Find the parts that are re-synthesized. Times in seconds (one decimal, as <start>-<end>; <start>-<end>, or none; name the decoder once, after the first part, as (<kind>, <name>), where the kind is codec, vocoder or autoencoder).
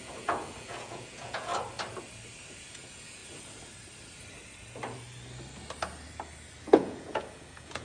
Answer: 0.0-1.5 (vocoder, Vocos); 2.6-3.2; 6.6-7.8